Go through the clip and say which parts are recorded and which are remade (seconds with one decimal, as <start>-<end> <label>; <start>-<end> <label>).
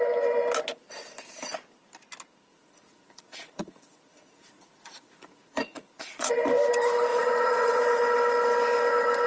0.0-2.5 recorded; 2.5-6.3 remade; 6.3-7.1 recorded; 7.1-8.0 remade; 8.0-9.3 recorded